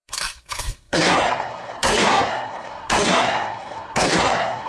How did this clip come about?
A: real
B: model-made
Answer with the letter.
B